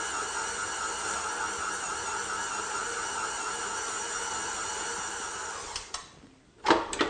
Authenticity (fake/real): real